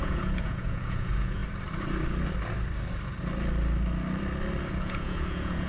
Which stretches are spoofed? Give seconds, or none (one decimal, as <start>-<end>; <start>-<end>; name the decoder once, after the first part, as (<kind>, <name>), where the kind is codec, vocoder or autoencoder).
0.0-1.4 (vocoder, Vocos); 4.7-5.7